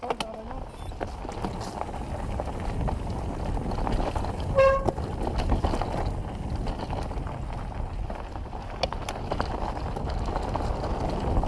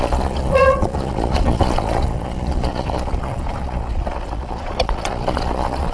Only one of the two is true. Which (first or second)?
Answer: first